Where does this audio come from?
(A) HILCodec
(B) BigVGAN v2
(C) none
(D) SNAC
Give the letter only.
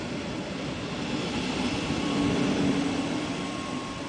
C